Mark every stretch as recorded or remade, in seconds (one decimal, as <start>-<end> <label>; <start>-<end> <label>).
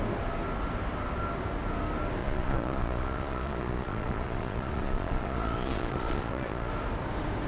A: 0.0-2.2 recorded; 2.2-6.7 remade; 6.7-7.5 recorded